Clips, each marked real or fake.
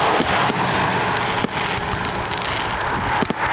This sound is real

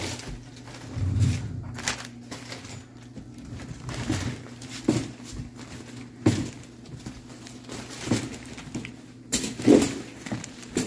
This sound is real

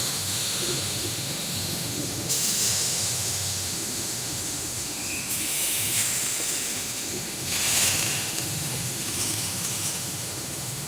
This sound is fake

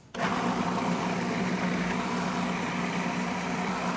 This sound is real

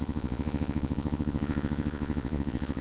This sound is fake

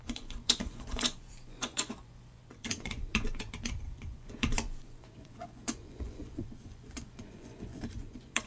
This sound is fake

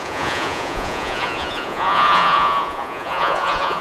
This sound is fake